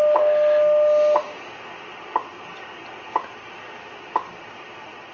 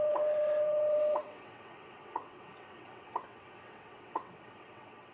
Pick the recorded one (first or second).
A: first